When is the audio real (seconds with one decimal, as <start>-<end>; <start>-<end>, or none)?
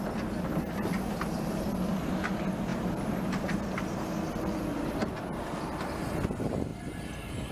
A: 0.0-7.5